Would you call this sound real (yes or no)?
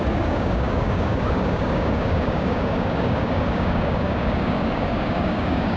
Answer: no